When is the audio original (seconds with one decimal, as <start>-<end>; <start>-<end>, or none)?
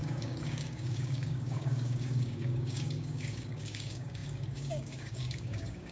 none